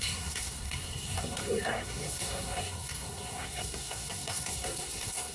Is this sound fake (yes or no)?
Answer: yes